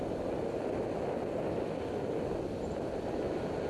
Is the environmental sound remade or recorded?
recorded